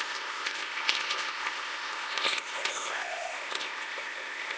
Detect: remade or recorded remade